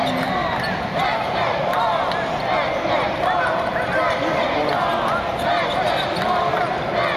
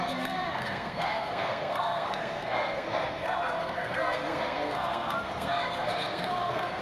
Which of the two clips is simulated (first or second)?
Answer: second